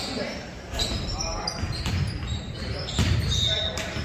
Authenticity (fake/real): fake